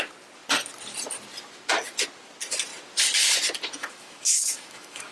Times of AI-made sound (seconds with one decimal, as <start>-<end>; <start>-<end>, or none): 3.8-5.1